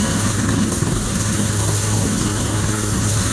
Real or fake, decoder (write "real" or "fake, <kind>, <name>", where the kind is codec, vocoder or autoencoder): fake, codec, SNAC